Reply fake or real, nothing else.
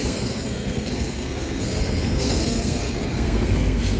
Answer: fake